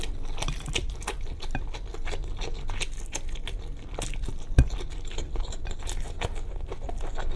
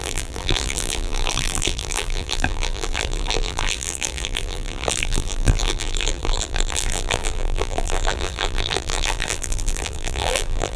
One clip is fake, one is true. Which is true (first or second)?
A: first